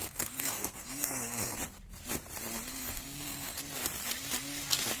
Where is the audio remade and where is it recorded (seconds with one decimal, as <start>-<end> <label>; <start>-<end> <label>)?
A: 0.0-1.6 remade; 1.6-2.7 recorded; 2.7-3.7 remade; 3.7-5.0 recorded